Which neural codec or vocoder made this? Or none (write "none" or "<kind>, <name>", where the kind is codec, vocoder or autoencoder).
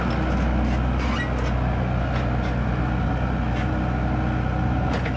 none